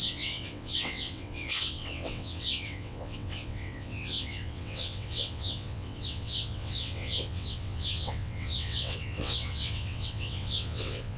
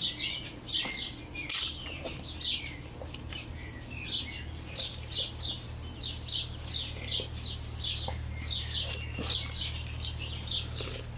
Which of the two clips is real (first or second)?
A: second